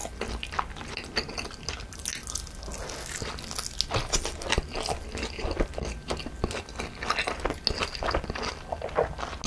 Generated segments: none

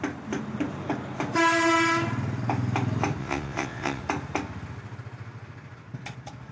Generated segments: 3.2-4.0 (vocoder, WaveNeXt)